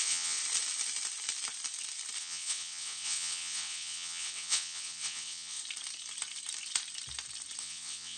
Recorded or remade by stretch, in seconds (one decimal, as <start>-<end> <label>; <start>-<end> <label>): 0.0-0.4 remade; 0.4-2.2 recorded; 2.2-5.6 remade; 5.6-7.6 recorded; 7.6-8.2 remade